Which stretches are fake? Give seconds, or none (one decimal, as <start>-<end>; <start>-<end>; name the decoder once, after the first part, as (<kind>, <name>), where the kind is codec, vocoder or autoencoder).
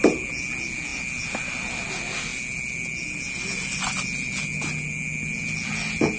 none